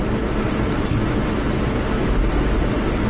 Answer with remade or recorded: recorded